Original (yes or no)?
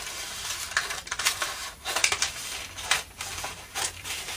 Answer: no